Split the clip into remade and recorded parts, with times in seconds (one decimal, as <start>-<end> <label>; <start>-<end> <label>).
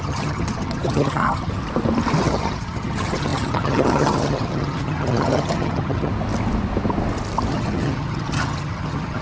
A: 0.0-1.6 remade; 1.6-2.2 recorded; 2.2-6.1 remade; 6.1-7.5 recorded; 7.5-9.2 remade